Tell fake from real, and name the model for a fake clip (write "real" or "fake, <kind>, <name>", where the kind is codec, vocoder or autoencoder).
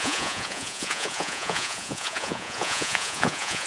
fake, vocoder, Vocos